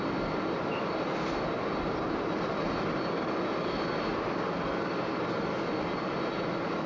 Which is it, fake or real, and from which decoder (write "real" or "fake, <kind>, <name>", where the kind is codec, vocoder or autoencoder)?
real